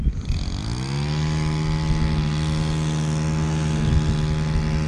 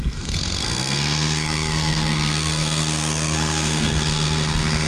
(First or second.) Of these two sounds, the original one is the first